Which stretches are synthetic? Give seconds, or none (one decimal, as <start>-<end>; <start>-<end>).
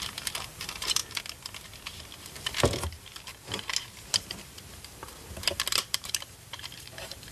0.0-1.0; 2.3-3.1; 4.2-7.3